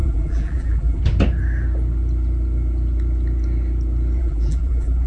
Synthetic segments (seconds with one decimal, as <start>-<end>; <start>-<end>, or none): 0.0-1.0; 4.2-5.1

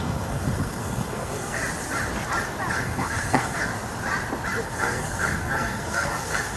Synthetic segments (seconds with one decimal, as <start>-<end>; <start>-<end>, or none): 0.0-1.6; 2.7-3.7; 4.6-6.6